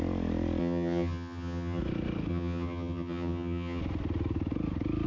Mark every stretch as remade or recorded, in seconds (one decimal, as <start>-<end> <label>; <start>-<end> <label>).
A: 0.0-0.6 recorded; 0.6-1.8 remade; 1.8-2.3 recorded; 2.3-3.8 remade; 3.8-5.1 recorded